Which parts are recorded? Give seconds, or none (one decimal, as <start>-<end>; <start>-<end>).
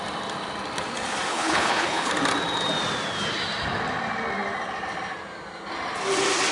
0.0-1.3; 2.1-6.5